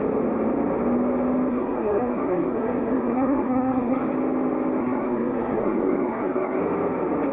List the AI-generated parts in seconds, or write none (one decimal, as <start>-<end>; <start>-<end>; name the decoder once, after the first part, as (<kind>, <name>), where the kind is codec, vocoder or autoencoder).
1.5-4.0 (codec, SNAC); 4.8-6.6